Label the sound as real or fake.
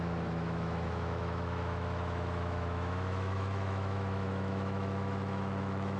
fake